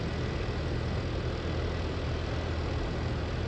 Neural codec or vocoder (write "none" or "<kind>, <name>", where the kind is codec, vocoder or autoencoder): none